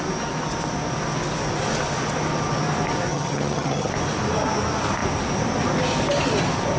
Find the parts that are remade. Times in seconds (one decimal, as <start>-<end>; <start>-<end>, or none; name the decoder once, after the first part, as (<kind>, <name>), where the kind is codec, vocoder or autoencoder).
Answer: 3.1-3.9 (vocoder, HiFi-GAN)